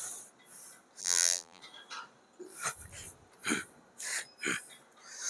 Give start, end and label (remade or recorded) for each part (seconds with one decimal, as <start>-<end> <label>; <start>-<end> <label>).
0.0-1.0 recorded; 1.0-1.6 remade; 1.6-5.3 recorded